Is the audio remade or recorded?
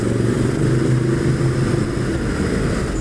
recorded